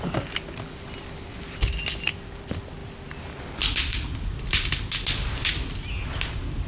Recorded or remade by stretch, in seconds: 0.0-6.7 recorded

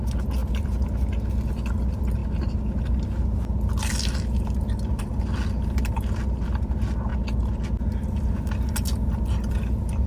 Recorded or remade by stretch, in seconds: 0.0-10.1 recorded

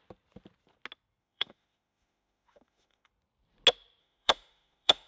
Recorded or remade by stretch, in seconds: 0.0-1.2 recorded; 1.2-3.1 remade; 3.1-4.0 recorded; 4.0-5.1 remade

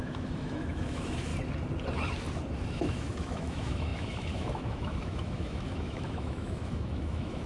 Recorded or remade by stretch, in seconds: 0.0-1.3 remade; 1.3-2.7 recorded; 2.7-7.5 remade

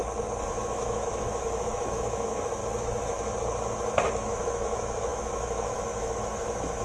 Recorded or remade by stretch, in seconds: 0.0-0.5 recorded; 0.5-2.6 remade; 2.6-4.1 recorded; 4.1-6.8 remade

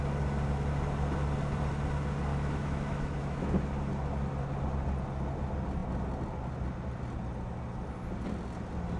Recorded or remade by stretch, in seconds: 0.0-2.3 recorded; 2.3-3.5 remade; 3.5-9.0 recorded

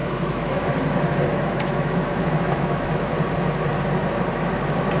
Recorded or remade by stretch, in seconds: 0.0-0.7 remade; 0.7-1.3 recorded; 1.3-3.1 remade; 3.1-5.0 recorded

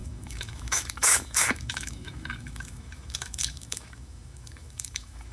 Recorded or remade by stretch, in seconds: 0.0-5.3 remade